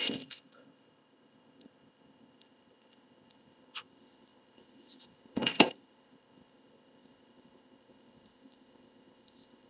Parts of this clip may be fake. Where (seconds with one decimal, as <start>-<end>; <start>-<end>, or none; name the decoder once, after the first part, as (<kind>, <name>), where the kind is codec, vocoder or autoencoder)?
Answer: 0.0-9.7 (codec, ZipCodec)